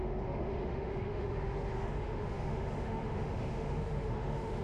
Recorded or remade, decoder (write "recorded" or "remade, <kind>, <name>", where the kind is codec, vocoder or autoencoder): remade, autoencoder, DAC-VAE